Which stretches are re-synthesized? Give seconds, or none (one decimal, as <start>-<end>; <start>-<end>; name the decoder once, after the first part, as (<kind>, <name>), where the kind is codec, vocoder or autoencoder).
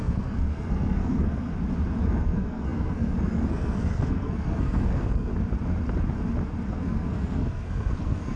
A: 0.0-1.5 (codec, SNAC); 2.0-5.3; 6.7-8.4